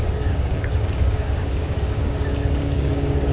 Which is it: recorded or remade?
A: remade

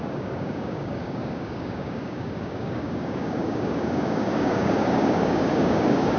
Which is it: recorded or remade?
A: remade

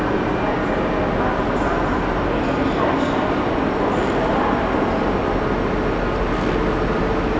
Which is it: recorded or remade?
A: recorded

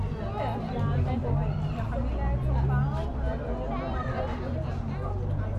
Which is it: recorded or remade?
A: recorded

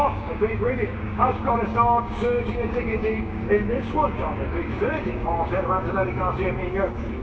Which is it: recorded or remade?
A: remade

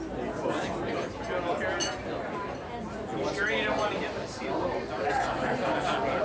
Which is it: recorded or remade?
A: recorded